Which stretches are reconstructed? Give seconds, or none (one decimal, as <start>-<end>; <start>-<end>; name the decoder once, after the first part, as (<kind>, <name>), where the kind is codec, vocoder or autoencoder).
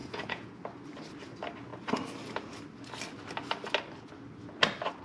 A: 0.0-0.6 (vocoder, Vocos)